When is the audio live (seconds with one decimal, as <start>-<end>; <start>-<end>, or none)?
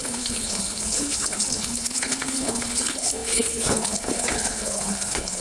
none